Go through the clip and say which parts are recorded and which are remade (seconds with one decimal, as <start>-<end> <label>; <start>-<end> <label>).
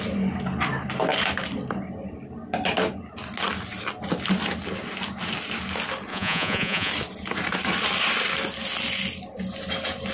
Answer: 0.0-6.1 recorded; 6.1-6.9 remade; 6.9-10.1 recorded